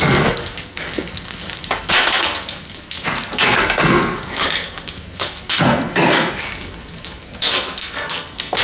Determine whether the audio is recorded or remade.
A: remade